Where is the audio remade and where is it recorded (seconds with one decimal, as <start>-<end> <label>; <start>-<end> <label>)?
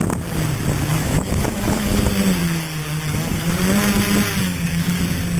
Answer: 0.0-0.9 recorded; 0.9-2.0 remade; 2.0-2.4 recorded; 2.4-3.5 remade; 3.5-4.4 recorded; 4.4-5.0 remade; 5.0-5.4 recorded